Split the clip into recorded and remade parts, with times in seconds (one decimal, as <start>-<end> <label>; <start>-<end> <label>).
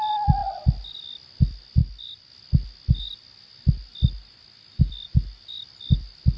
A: 0.0-6.4 recorded